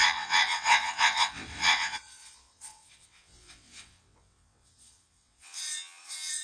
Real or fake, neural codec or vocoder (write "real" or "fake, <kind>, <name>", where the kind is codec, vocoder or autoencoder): fake, vocoder, WaveNeXt